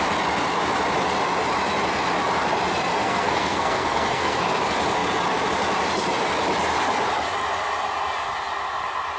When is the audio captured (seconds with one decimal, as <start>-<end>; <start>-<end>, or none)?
0.0-3.0; 4.6-9.2